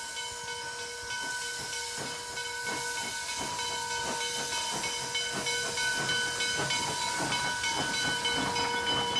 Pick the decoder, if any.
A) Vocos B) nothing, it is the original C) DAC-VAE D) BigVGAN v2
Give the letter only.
B